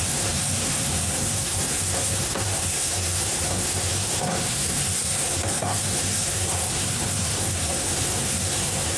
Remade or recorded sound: remade